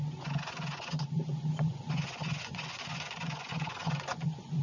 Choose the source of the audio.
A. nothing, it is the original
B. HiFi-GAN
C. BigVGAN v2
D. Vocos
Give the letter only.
D